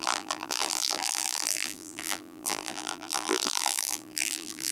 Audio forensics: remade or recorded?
remade